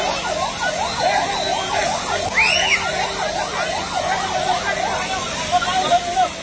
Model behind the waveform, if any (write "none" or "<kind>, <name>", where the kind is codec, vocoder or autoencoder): none